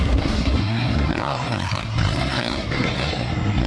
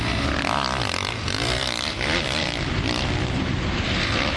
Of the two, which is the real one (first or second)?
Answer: second